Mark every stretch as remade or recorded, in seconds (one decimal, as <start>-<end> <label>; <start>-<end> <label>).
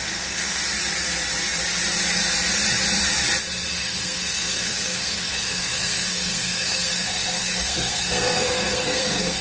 0.0-0.6 remade; 0.6-3.7 recorded; 3.7-9.4 remade